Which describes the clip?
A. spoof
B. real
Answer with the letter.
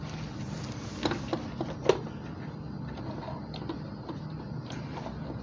B